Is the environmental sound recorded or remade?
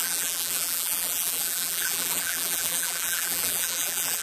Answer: remade